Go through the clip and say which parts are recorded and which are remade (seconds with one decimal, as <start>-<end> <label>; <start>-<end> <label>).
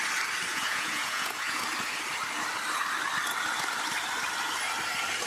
0.0-0.5 recorded; 0.5-1.6 remade; 1.6-5.3 recorded